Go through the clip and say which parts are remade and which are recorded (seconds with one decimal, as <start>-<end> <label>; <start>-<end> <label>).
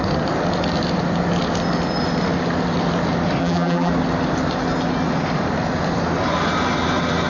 0.0-3.4 recorded; 3.4-3.9 remade; 3.9-7.3 recorded